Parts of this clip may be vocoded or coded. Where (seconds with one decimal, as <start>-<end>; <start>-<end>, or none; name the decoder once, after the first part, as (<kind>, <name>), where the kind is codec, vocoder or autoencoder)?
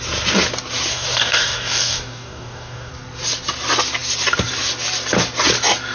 0.9-2.9 (codec, DAC)